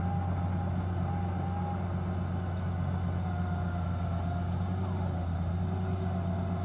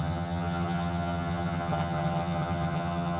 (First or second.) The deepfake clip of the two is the second